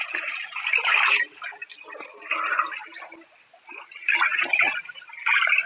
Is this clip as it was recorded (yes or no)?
yes